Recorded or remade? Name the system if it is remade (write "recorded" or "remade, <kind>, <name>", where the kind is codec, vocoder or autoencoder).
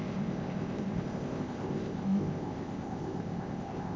remade, codec, ZipCodec